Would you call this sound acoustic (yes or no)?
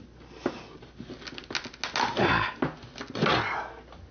yes